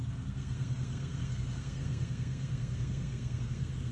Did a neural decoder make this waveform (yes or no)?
yes